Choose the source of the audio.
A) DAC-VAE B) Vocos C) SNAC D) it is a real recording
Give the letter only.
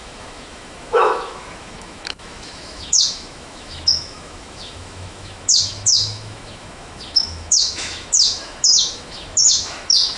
A